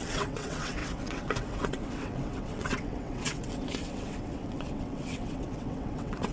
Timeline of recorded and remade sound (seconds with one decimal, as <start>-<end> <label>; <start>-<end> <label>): 0.0-6.3 remade